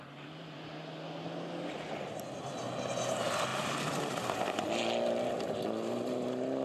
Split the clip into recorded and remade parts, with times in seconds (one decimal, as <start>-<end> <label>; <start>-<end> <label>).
0.0-6.6 recorded